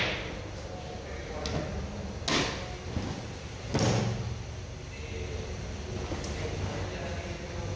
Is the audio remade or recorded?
recorded